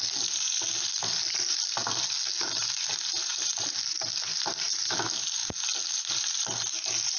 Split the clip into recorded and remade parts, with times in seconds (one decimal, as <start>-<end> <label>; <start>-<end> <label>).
0.0-7.2 recorded